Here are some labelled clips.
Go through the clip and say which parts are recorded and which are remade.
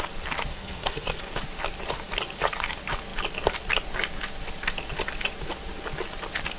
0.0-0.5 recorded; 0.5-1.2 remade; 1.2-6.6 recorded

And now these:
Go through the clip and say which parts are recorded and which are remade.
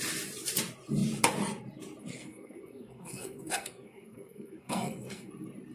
0.0-2.0 recorded; 2.0-5.3 remade; 5.3-5.7 recorded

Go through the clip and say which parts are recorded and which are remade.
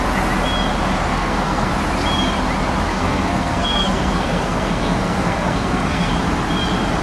0.0-1.1 recorded; 1.1-1.7 remade; 1.7-2.9 recorded; 2.9-6.1 remade; 6.1-7.0 recorded